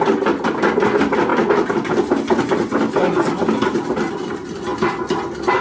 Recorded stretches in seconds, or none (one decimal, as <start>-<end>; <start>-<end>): 0.0-5.6